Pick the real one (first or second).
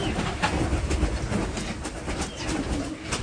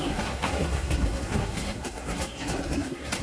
first